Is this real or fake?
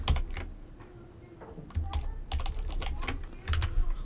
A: real